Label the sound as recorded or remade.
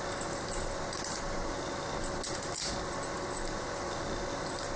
recorded